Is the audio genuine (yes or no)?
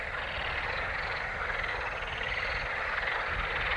yes